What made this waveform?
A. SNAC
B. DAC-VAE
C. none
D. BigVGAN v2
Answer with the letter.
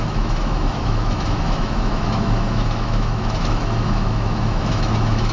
B